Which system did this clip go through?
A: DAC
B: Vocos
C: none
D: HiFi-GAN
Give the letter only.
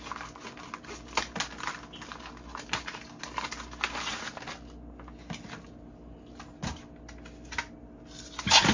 C